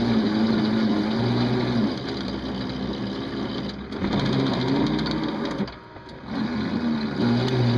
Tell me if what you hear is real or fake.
real